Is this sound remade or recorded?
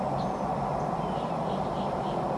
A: recorded